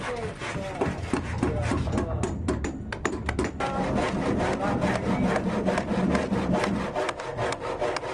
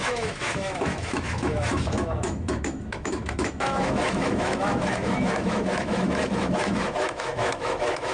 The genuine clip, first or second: first